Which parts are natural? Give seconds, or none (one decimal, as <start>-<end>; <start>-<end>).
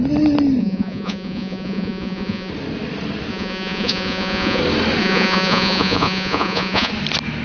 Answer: 0.0-0.6; 2.5-3.3; 4.6-5.0; 6.9-7.4